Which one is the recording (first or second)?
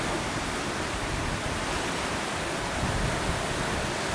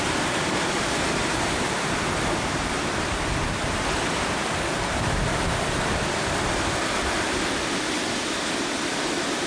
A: first